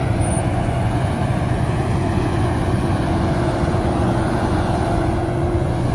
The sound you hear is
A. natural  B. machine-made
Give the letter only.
B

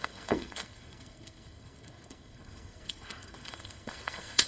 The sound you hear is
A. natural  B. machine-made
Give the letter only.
B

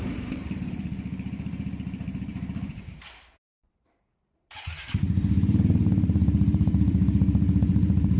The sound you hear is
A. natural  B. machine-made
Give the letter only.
B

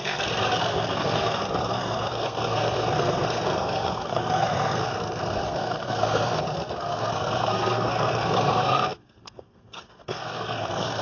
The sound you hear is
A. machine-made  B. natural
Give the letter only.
A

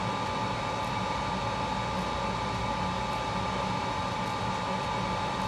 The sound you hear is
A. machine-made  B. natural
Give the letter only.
B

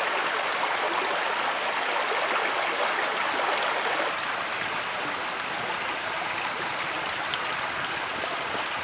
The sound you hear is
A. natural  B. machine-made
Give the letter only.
A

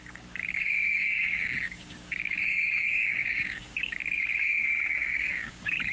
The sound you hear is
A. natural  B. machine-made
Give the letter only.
B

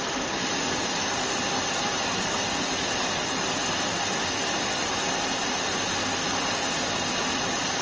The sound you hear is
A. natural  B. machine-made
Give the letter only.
A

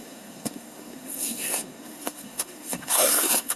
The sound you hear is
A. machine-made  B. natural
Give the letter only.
A